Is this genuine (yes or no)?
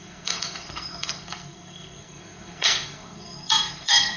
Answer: no